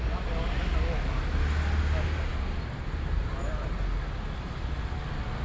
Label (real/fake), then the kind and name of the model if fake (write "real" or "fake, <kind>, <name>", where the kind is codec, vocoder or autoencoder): real